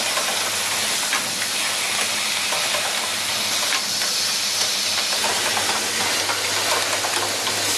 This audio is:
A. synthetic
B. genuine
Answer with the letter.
B